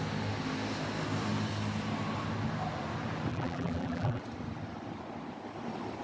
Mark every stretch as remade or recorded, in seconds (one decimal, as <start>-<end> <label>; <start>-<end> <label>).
0.0-3.3 recorded; 3.3-4.2 remade; 4.2-6.0 recorded

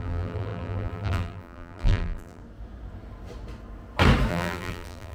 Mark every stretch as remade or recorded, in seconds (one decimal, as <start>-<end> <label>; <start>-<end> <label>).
0.0-2.4 remade; 2.4-4.3 recorded; 4.3-5.1 remade

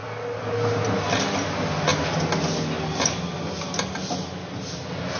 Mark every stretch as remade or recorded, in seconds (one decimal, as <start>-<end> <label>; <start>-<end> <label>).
0.0-5.2 recorded

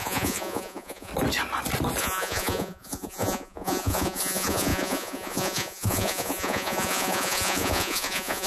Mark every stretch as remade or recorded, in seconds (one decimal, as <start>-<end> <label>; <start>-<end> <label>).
0.0-1.1 remade; 1.1-2.0 recorded; 2.0-8.5 remade

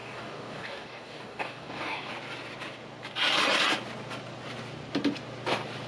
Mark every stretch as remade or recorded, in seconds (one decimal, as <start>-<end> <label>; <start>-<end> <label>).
0.0-2.1 remade; 2.1-5.9 recorded